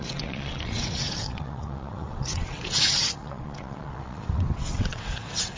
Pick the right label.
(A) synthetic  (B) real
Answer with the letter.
A